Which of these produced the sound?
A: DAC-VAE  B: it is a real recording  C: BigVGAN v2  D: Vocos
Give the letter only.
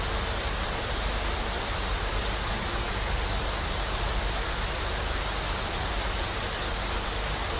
B